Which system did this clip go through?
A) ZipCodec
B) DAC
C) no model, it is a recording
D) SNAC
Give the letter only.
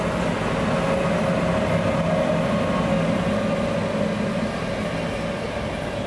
C